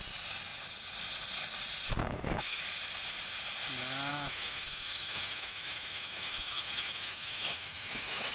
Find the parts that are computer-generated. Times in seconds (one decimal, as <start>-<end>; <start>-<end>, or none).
2.0-2.6; 4.1-8.3